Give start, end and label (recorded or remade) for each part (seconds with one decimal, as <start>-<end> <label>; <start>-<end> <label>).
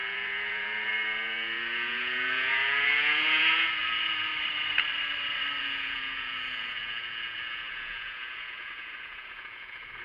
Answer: 0.0-4.3 remade; 4.3-5.6 recorded; 5.6-10.0 remade